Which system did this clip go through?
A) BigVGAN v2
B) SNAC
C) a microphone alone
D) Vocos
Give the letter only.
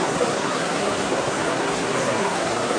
B